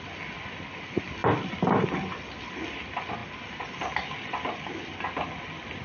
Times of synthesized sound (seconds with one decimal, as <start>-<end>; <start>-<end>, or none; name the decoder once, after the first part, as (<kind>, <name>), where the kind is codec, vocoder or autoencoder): none